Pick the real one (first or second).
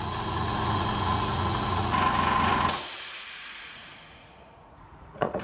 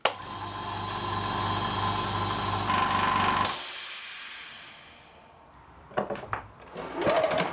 second